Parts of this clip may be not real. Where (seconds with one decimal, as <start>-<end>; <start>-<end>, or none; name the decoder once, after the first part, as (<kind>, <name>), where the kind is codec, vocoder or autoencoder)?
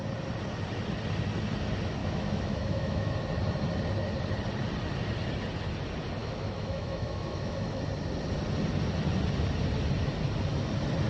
2.0-3.1 (autoencoder, DAC-VAE); 6.2-7.8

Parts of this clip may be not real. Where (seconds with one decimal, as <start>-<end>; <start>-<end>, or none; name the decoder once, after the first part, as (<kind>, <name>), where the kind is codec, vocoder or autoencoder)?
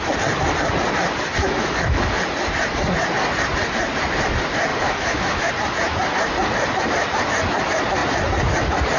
1.4-2.0 (autoencoder, DAC-VAE); 4.7-5.5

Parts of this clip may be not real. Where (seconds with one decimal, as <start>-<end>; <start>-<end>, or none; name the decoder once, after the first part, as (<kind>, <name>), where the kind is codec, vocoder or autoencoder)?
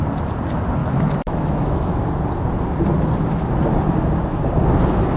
0.8-1.9 (autoencoder, DAC-VAE)